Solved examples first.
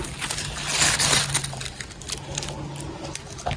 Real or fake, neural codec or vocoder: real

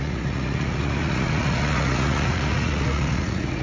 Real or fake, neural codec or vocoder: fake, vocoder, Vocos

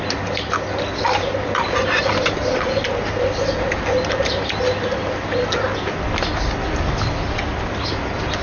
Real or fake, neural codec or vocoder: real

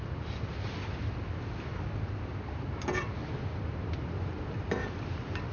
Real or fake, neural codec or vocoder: real